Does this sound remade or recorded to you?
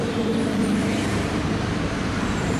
remade